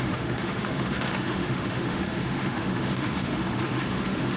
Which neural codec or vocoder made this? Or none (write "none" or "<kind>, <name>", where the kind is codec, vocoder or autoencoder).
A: autoencoder, DAC-VAE